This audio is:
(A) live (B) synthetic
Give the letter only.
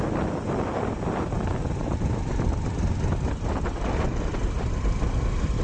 A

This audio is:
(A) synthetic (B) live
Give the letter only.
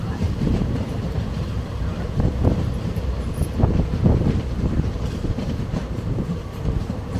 A